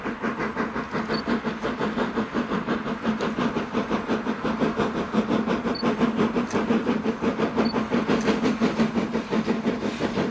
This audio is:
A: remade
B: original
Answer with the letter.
B